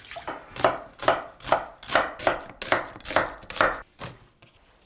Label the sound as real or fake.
real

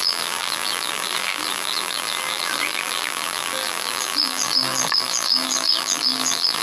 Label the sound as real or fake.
fake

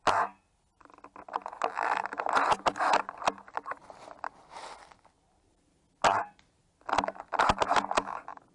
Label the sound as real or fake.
real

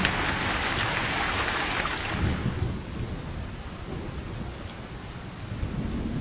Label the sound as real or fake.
real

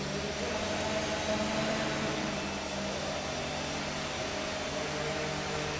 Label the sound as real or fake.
real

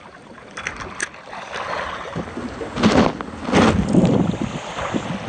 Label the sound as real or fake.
real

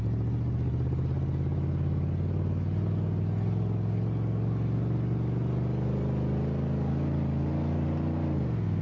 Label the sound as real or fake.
real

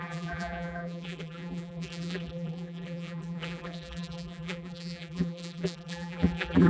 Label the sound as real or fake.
fake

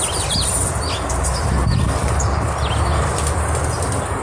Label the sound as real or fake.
real